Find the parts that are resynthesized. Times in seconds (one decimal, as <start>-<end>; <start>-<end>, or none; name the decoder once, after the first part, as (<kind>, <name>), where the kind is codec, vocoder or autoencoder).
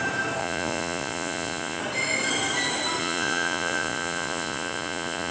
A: 0.4-1.8 (vocoder, Vocos); 3.0-5.3